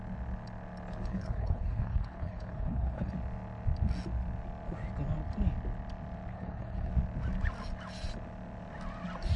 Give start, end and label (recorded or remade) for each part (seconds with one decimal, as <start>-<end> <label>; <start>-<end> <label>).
0.0-1.1 recorded; 1.1-3.1 remade; 3.1-6.3 recorded; 6.3-6.9 remade; 6.9-9.4 recorded

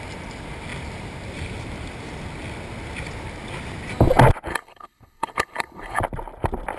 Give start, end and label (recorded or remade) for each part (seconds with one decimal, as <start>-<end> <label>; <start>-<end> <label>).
0.0-4.5 recorded; 4.5-6.0 remade; 6.0-6.8 recorded

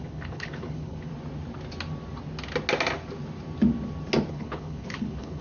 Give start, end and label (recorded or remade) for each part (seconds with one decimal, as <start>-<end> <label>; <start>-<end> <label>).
0.0-1.1 remade; 1.1-4.3 recorded; 4.3-5.4 remade

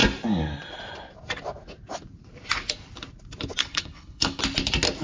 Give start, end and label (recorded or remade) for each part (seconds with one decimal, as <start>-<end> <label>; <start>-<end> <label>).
0.0-3.6 recorded; 3.6-4.4 remade; 4.4-5.0 recorded

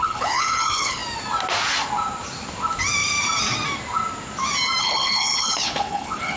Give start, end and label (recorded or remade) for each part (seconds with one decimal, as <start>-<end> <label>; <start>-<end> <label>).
0.0-1.0 remade; 1.0-4.8 recorded; 4.8-6.4 remade